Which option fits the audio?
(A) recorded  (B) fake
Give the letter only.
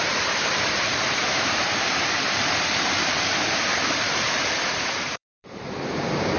B